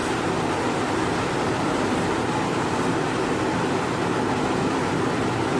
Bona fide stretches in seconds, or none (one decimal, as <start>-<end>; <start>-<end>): 0.0-5.6